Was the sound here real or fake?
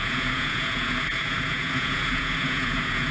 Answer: fake